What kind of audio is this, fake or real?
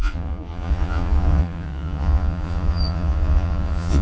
fake